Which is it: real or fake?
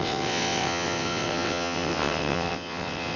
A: fake